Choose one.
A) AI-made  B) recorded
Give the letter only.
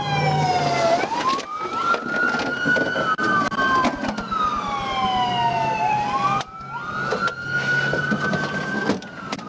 B